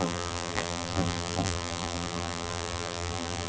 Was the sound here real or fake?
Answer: fake